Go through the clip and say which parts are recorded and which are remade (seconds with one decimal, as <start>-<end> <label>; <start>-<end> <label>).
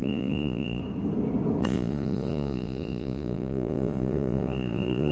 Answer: 0.0-0.8 remade; 0.8-1.6 recorded; 1.6-5.1 remade